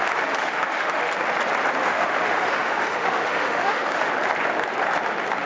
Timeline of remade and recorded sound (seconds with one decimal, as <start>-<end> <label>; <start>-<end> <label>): 0.0-0.4 recorded; 0.4-1.0 remade; 1.0-1.8 recorded; 1.8-4.1 remade; 4.1-5.5 recorded